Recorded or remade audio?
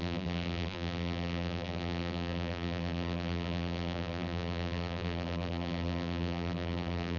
remade